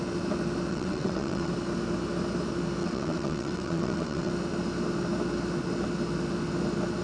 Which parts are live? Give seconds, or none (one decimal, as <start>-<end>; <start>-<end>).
0.0-0.7; 1.5-2.8; 4.3-7.0